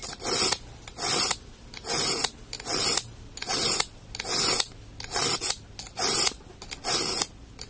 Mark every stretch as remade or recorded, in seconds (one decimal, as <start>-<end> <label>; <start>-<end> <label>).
0.0-7.7 recorded